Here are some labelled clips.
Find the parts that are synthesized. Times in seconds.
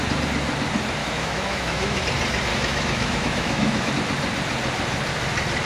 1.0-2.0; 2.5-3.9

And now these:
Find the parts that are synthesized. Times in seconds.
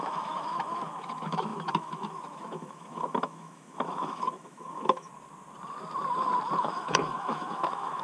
0.0-5.1; 6.6-8.0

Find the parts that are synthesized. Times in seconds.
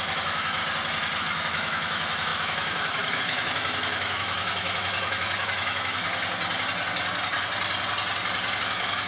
0.0-0.6; 1.2-6.0; 8.6-9.1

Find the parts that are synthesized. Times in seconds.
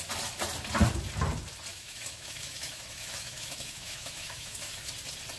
1.7-4.9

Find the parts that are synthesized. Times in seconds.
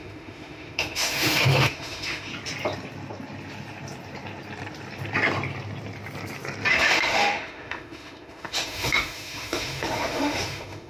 0.0-2.3; 6.7-10.9